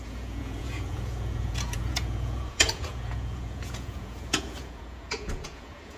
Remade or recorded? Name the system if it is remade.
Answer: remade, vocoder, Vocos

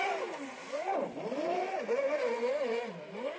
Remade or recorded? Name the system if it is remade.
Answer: recorded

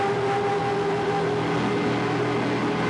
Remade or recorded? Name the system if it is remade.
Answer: recorded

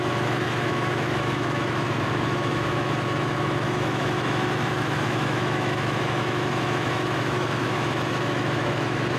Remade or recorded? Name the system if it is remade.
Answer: remade, autoencoder, DAC-VAE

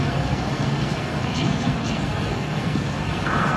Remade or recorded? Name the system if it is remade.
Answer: remade, codec, SNAC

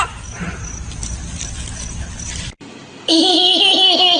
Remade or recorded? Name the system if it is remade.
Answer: recorded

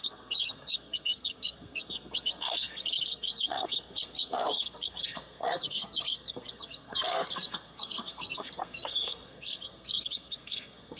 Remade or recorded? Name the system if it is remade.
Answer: remade, codec, SNAC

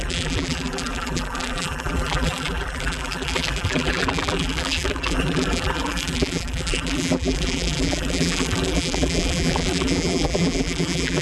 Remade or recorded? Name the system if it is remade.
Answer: remade, vocoder, BigVGAN v2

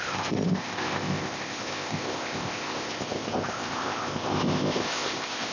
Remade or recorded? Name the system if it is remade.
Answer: remade, codec, ZipCodec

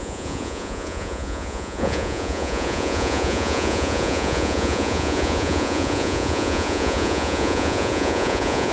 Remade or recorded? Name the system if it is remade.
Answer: remade, vocoder, Vocos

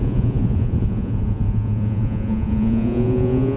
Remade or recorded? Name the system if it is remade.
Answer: remade, vocoder, Vocos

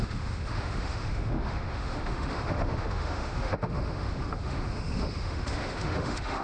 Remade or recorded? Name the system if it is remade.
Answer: remade, autoencoder, DAC-VAE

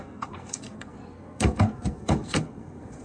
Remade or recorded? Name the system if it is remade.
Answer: remade, codec, SNAC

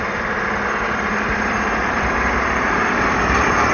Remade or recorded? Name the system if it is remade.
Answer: remade, vocoder, BigVGAN v2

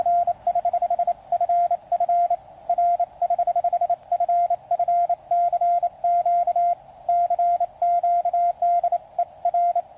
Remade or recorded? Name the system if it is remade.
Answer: recorded